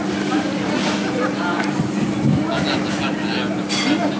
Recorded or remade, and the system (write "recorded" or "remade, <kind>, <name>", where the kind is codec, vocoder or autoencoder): recorded